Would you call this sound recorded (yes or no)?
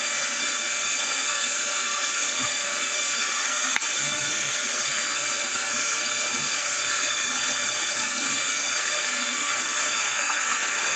no